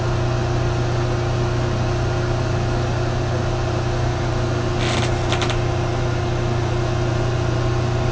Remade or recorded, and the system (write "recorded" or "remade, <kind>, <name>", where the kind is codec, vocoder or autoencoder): recorded